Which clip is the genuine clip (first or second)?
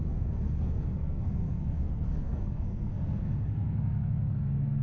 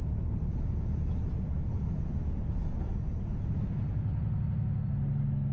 second